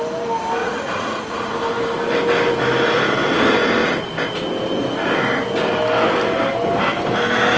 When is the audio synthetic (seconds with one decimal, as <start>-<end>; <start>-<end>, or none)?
0.6-1.5